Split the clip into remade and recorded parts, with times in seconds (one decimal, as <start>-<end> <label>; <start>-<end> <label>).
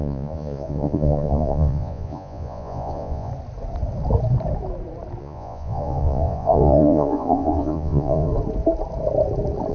0.0-3.3 remade; 3.3-5.2 recorded; 5.2-8.3 remade; 8.3-9.7 recorded